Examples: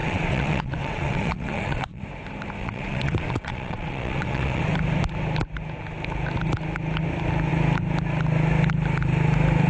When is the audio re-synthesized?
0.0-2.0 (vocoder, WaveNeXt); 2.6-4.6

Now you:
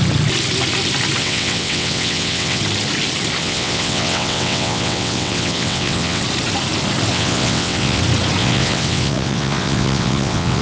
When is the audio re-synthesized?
1.2-2.6 (vocoder, WaveNeXt); 3.4-6.2; 7.1-8.0; 8.4-10.6